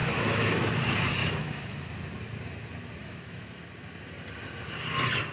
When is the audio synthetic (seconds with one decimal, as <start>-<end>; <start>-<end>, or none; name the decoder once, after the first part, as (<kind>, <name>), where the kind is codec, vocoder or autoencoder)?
0.0-0.6 (autoencoder, DAC-VAE); 1.2-1.9; 3.0-3.6

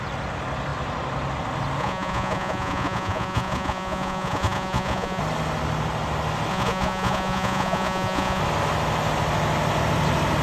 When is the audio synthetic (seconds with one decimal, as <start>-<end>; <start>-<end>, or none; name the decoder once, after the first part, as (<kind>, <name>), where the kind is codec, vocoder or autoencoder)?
1.8-5.2 (vocoder, Vocos); 6.5-8.4

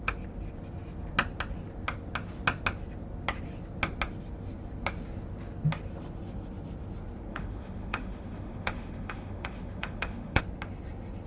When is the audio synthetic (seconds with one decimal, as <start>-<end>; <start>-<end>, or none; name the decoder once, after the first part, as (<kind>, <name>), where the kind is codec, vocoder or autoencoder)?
7.3-10.4 (autoencoder, DAC-VAE)

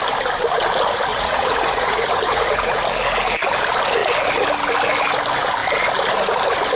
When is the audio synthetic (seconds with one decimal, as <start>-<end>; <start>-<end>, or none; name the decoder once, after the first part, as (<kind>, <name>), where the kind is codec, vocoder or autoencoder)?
1.1-2.8 (vocoder, Vocos)

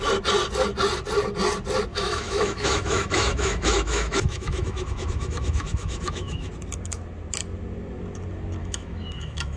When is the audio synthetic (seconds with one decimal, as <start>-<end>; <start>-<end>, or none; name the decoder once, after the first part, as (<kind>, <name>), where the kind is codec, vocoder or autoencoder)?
1.9-6.5 (autoencoder, DAC-VAE); 8.6-9.6

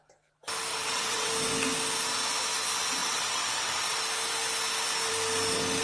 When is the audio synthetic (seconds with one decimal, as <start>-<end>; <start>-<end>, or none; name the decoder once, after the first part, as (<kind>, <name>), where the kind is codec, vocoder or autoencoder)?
0.7-1.3 (vocoder, WaveNeXt); 3.0-4.0

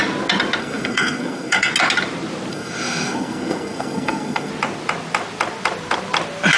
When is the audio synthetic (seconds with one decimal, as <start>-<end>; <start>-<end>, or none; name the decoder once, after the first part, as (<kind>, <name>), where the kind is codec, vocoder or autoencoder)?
0.6-1.7 (codec, SNAC); 2.5-4.5